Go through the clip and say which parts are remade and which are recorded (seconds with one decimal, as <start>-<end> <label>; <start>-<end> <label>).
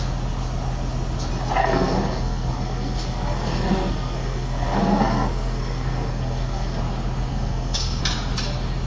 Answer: 0.0-1.6 recorded; 1.6-6.8 remade; 6.8-7.3 recorded; 7.3-8.0 remade; 8.0-8.9 recorded